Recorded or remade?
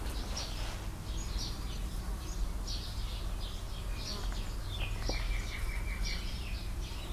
recorded